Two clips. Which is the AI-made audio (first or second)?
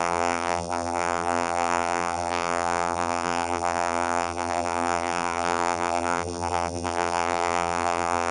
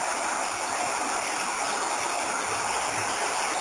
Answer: first